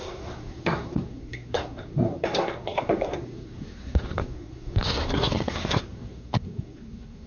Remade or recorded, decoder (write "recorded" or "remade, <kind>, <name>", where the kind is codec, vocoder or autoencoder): remade, codec, SNAC